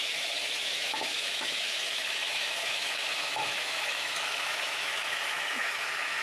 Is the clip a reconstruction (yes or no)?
yes